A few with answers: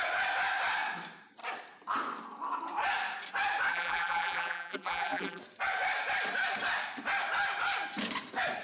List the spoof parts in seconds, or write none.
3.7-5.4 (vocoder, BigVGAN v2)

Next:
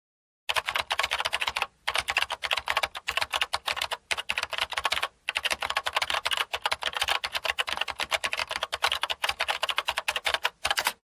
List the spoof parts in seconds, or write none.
none

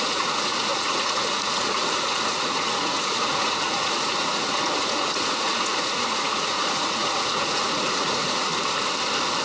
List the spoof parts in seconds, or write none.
0.0-8.5 (vocoder, Vocos)

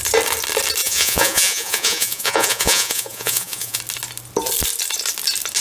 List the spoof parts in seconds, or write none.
0.8-3.8 (vocoder, Vocos)

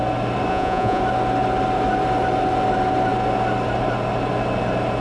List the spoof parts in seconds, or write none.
0.5-1.0 (vocoder, Vocos)

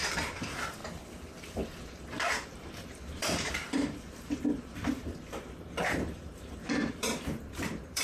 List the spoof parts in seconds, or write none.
0.0-0.8 (vocoder, BigVGAN v2); 2.1-8.0

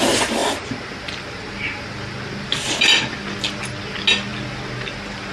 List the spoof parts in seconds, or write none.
none

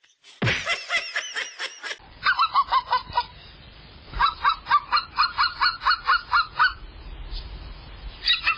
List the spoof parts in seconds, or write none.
none